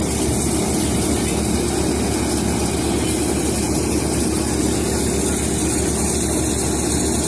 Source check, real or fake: real